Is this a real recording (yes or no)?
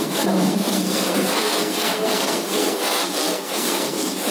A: no